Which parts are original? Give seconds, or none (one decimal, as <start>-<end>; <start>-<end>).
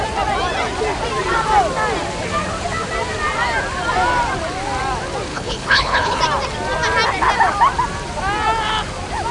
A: 0.0-5.3; 6.2-9.3